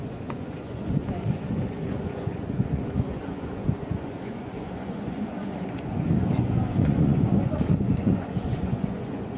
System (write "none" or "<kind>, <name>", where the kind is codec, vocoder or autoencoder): vocoder, Vocos